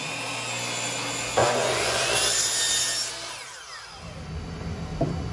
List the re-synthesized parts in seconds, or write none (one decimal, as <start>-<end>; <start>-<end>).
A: 1.4-2.1